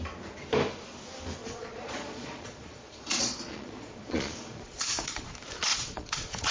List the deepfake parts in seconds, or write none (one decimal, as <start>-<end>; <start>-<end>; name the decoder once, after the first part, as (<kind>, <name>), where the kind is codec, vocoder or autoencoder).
1.4-5.3 (vocoder, Vocos); 5.7-6.5